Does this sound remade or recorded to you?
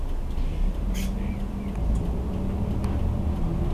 recorded